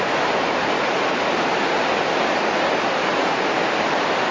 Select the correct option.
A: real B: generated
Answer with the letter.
B